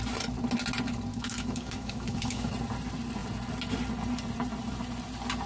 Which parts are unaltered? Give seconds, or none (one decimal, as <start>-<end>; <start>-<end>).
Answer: 0.0-1.1; 2.5-5.5